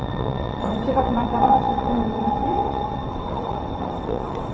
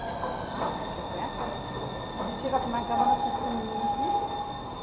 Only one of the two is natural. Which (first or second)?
second